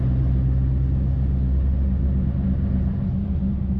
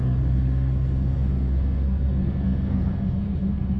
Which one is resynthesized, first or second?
second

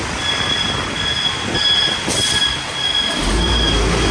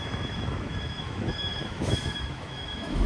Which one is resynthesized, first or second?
second